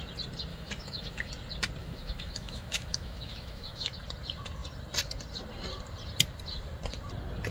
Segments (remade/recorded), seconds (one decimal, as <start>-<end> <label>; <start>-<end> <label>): 0.0-0.5 recorded; 0.5-1.3 remade; 1.3-1.8 recorded; 1.8-3.9 remade; 3.9-7.5 recorded